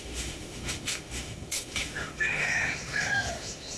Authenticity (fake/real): fake